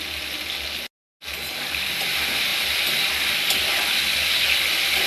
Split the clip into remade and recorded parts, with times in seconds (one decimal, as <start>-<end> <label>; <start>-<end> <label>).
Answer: 0.0-2.5 recorded; 2.5-5.1 remade

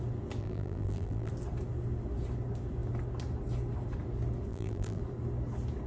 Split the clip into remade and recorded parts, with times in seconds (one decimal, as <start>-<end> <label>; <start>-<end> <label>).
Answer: 0.0-0.4 recorded; 0.4-1.3 remade; 1.3-4.5 recorded; 4.5-5.0 remade; 5.0-5.9 recorded

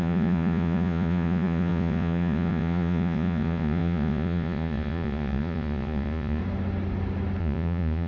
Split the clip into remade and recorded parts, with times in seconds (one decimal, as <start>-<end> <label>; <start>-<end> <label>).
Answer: 0.0-6.4 remade; 6.4-7.4 recorded; 7.4-8.1 remade

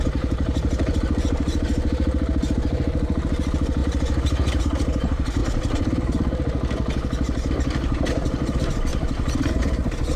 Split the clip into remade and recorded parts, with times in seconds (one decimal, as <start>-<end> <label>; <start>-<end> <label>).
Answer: 0.0-1.7 remade; 1.7-2.4 recorded; 2.4-3.8 remade; 3.8-4.6 recorded; 4.6-5.4 remade; 5.4-7.5 recorded; 7.5-8.9 remade; 8.9-9.6 recorded; 9.6-10.2 remade

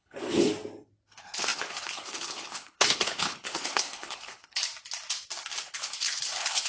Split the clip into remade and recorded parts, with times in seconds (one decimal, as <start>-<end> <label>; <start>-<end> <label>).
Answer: 0.0-0.5 remade; 0.5-1.1 recorded; 1.1-4.6 remade; 4.6-5.6 recorded; 5.6-6.7 remade